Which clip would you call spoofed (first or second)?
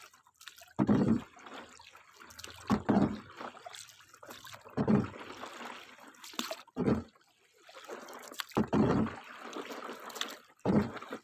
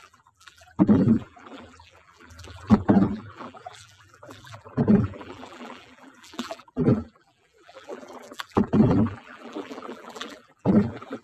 second